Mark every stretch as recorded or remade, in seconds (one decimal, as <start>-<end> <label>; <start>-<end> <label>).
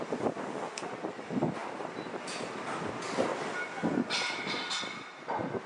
0.0-5.7 recorded